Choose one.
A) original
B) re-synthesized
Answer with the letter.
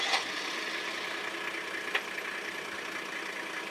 A